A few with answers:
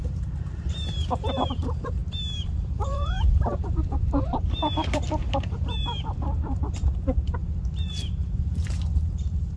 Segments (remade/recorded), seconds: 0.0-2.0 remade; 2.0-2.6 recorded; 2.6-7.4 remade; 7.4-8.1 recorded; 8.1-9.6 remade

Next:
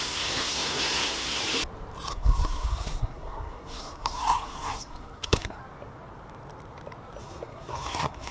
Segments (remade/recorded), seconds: 0.0-1.4 remade; 1.4-2.1 recorded; 2.1-5.6 remade; 5.6-7.2 recorded; 7.2-8.3 remade

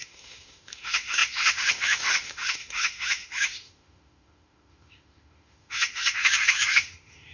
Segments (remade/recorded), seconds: 0.0-7.3 remade

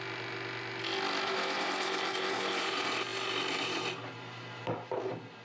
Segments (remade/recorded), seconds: 0.0-5.4 recorded

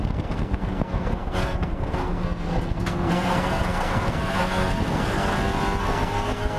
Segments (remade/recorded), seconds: 0.0-5.3 remade; 5.3-5.8 recorded; 5.8-6.6 remade